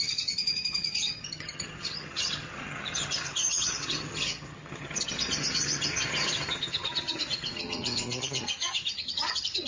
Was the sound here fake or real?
fake